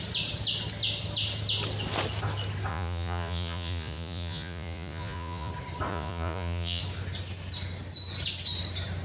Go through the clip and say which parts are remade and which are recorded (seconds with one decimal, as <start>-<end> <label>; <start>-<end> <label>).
0.0-2.7 recorded; 2.7-5.5 remade; 5.5-5.9 recorded; 5.9-6.8 remade; 6.8-9.0 recorded

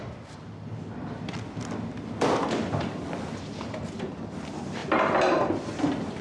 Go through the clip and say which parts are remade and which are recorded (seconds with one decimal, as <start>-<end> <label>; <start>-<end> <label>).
0.0-6.2 recorded